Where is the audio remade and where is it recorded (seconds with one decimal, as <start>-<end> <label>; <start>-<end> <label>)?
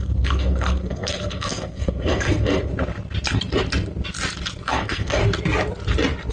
0.0-2.7 remade; 2.7-4.7 recorded; 4.7-5.2 remade; 5.2-6.3 recorded